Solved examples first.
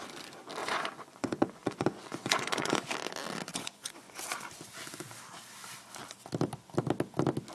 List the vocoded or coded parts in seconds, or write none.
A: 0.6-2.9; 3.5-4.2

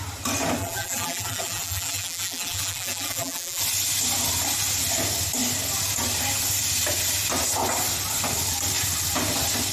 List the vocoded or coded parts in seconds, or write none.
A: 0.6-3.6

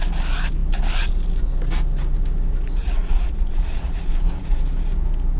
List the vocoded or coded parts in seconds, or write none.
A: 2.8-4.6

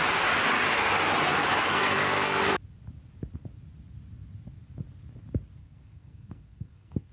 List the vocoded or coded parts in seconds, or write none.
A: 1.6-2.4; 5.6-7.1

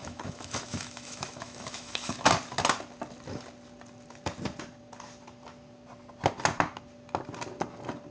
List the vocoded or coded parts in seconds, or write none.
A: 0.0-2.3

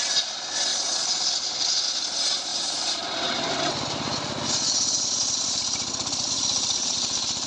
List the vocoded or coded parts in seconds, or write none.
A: 0.7-1.6; 2.5-3.7

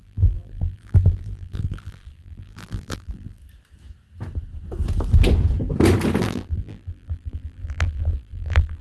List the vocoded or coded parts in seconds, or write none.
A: 0.0-3.4; 6.2-8.8

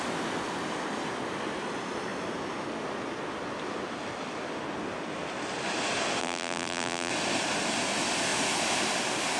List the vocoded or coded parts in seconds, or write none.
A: 6.2-7.1